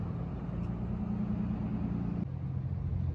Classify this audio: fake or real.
real